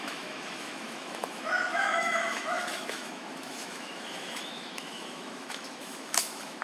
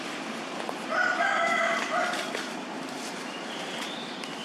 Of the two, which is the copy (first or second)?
first